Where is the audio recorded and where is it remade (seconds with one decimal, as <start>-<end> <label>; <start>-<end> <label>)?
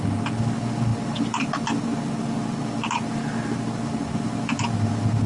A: 0.0-5.3 recorded